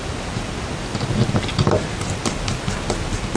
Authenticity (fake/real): real